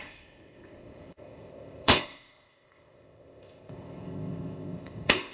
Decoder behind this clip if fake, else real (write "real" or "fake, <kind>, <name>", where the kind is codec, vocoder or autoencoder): fake, codec, ZipCodec